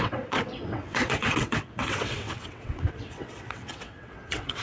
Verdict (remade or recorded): remade